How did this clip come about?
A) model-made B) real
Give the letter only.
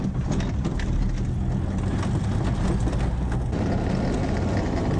B